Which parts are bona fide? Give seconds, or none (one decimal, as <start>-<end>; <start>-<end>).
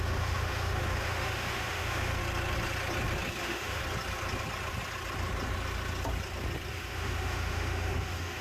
2.2-3.4; 3.8-6.7